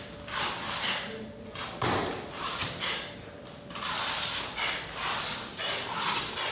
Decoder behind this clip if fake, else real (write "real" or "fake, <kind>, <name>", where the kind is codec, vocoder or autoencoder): real